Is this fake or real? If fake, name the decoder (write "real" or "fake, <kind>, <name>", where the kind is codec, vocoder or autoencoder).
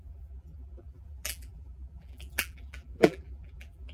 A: fake, vocoder, BigVGAN v2